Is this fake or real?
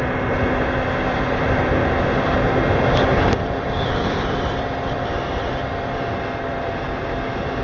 real